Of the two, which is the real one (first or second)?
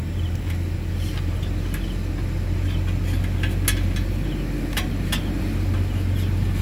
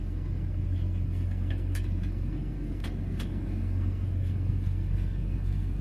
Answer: first